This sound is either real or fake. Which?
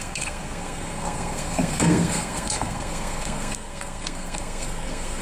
fake